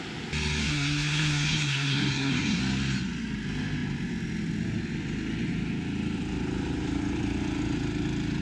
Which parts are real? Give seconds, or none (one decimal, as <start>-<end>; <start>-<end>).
0.0-0.6; 2.6-8.4